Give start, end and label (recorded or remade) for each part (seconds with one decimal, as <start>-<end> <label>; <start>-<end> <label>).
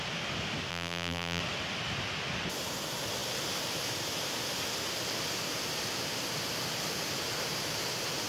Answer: 0.0-0.7 recorded; 0.7-1.4 remade; 1.4-8.3 recorded